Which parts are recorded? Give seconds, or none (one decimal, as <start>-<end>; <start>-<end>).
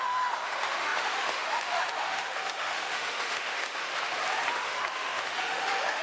3.9-4.5